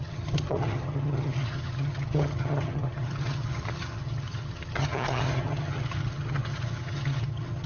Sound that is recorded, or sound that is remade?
remade